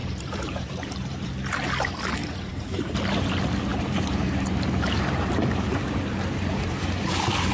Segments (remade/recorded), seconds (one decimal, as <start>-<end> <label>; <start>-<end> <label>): 0.0-1.3 remade; 1.3-2.2 recorded; 2.2-3.1 remade; 3.1-3.7 recorded; 3.7-5.8 remade; 5.8-7.5 recorded